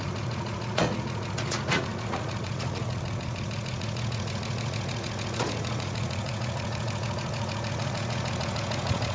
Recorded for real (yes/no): no